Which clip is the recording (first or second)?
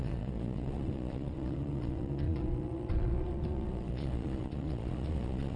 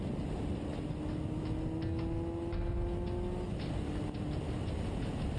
second